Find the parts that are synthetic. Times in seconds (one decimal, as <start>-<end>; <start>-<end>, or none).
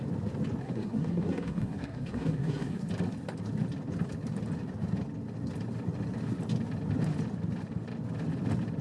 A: 0.6-2.9